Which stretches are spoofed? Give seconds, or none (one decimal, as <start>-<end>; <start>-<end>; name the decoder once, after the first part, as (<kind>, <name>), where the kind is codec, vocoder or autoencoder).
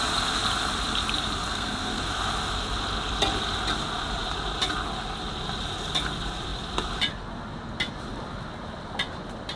1.5-2.0 (codec, SNAC)